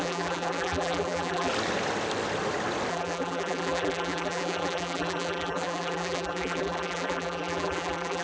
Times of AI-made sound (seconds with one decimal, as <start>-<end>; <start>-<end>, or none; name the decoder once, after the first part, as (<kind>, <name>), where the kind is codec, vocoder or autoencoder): 0.0-1.5 (vocoder, BigVGAN v2); 2.9-8.2

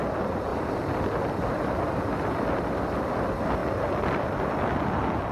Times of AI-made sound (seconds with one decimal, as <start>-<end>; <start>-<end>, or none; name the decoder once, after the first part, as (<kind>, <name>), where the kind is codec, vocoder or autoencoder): none

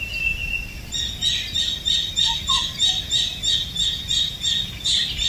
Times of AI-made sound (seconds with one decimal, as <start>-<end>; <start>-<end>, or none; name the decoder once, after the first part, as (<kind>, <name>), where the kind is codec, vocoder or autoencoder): none

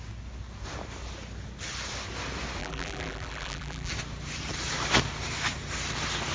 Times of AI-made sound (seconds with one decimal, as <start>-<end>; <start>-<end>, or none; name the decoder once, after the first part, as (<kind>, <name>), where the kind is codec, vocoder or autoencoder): 2.6-3.9 (vocoder, BigVGAN v2)

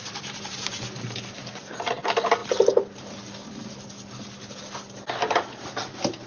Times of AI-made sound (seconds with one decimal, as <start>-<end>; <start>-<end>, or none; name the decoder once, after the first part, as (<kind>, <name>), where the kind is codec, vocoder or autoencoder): 0.0-1.9 (vocoder, BigVGAN v2); 5.8-6.3

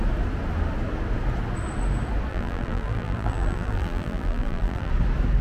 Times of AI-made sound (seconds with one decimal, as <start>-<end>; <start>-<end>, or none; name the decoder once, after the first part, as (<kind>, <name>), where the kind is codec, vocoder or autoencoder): 2.3-4.9 (vocoder, BigVGAN v2)